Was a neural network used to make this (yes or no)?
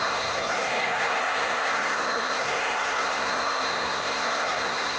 yes